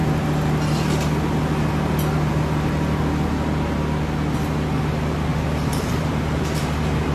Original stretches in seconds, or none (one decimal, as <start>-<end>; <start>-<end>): 0.0-5.3